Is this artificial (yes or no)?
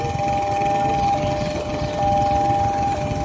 no